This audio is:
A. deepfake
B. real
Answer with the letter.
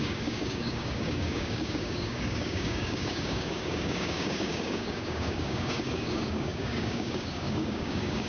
A